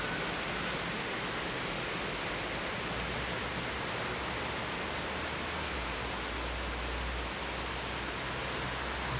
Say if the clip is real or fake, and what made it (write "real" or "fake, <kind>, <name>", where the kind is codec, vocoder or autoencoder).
real